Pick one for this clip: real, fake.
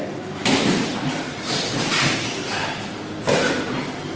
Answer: real